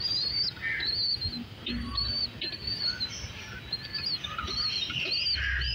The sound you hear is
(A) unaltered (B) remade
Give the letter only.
A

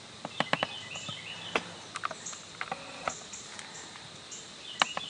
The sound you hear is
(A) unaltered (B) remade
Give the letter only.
A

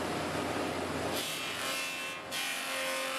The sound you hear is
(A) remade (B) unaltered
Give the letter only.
B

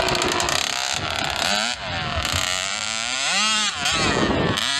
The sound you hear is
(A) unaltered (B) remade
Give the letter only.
A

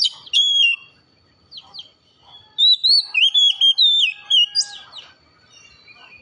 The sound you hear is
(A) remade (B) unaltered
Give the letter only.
B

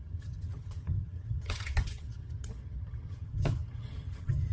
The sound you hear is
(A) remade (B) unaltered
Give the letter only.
A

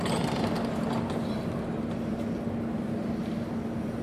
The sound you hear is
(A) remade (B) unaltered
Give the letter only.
B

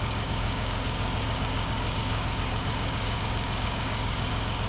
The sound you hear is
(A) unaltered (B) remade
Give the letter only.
B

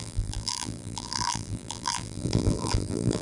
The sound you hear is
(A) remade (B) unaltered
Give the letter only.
A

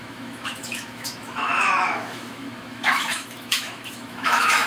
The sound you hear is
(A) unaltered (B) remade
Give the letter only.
B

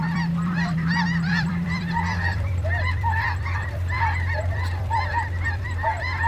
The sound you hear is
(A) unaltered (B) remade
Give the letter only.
B